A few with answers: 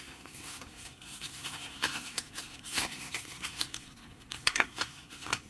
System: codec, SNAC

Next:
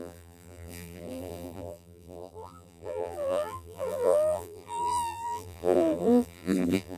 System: vocoder, BigVGAN v2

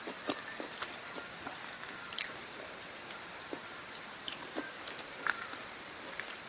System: vocoder, BigVGAN v2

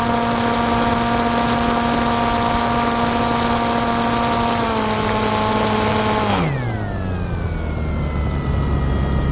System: none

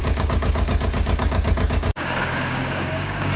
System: codec, DAC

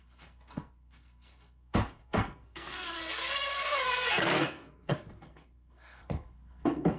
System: codec, SNAC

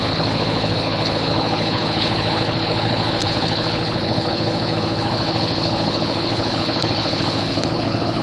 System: codec, HILCodec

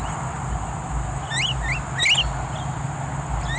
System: none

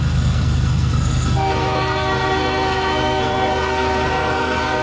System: codec, SNAC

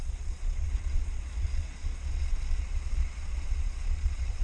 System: vocoder, Vocos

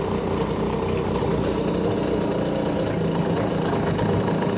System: none